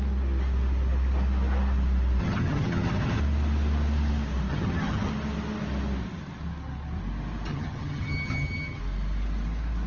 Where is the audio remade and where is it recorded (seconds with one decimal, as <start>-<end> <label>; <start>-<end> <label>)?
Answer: 0.0-2.2 recorded; 2.2-3.2 remade; 3.2-4.5 recorded; 4.5-5.1 remade; 5.1-7.5 recorded; 7.5-8.8 remade; 8.8-9.9 recorded